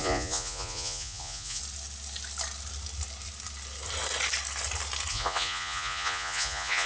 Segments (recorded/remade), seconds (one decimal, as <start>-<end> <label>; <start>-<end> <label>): 0.0-1.6 remade; 1.6-5.1 recorded; 5.1-6.9 remade